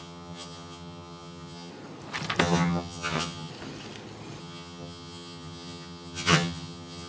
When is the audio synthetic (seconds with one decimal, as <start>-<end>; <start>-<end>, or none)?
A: 0.0-1.7; 2.4-3.5; 4.4-7.1